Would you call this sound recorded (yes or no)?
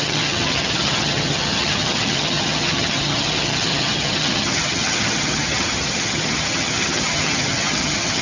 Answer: no